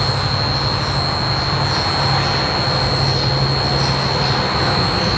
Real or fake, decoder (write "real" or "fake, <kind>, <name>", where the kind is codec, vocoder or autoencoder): real